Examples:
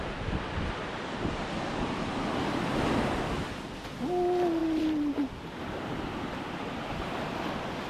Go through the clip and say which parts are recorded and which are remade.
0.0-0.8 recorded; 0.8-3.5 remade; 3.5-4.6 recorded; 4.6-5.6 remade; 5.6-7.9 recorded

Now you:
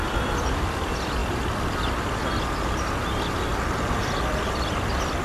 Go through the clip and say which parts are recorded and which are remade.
0.0-5.2 recorded

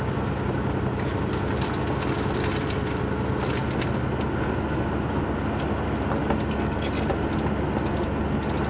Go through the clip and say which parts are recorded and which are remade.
0.0-8.7 recorded

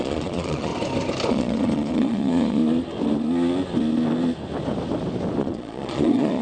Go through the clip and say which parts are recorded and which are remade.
0.0-0.7 remade; 0.7-1.3 recorded; 1.3-2.6 remade; 2.6-5.4 recorded; 5.4-6.4 remade

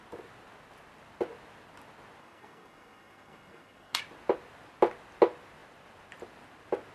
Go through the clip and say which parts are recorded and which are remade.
0.0-2.2 recorded; 2.2-4.0 remade; 4.0-6.9 recorded

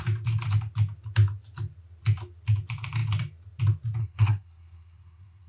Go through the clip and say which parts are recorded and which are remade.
0.0-4.0 recorded; 4.0-5.5 remade

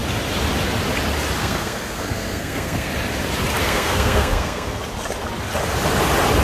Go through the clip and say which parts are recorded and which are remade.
0.0-1.4 recorded; 1.4-2.9 remade; 2.9-3.6 recorded; 3.6-4.8 remade; 4.8-6.4 recorded